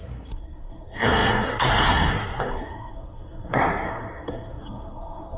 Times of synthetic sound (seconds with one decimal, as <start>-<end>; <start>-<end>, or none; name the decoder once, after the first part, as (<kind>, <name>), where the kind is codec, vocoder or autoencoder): 0.0-5.4 (codec, SNAC)